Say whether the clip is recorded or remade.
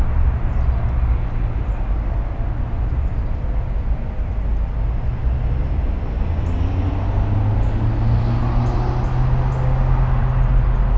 recorded